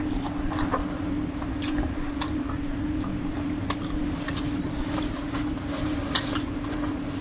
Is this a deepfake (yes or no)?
yes